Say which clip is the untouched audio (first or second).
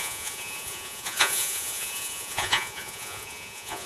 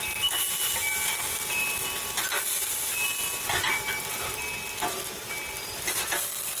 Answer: second